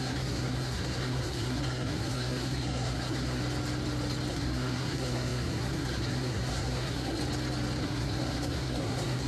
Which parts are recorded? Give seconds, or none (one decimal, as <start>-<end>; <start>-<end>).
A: 3.4-4.3; 7.2-7.8